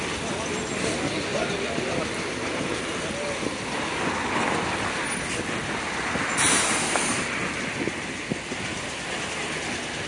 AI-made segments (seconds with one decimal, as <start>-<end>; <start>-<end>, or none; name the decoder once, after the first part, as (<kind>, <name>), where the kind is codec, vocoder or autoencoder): none